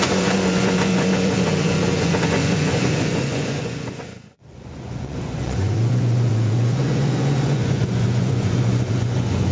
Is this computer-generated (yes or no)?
yes